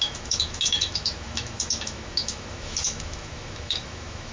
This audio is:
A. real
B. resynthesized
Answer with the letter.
B